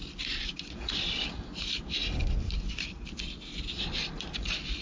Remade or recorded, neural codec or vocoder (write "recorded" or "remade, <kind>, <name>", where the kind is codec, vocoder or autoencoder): recorded